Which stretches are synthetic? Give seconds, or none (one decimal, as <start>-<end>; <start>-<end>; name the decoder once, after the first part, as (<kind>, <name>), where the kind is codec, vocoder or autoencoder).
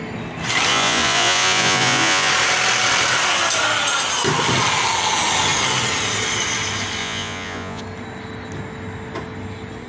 0.7-2.3 (vocoder, Vocos); 7.0-7.8